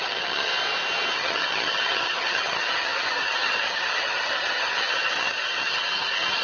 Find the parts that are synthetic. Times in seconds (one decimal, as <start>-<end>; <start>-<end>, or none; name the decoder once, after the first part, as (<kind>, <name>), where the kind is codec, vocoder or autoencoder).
0.0-0.5 (vocoder, HiFi-GAN); 1.1-6.4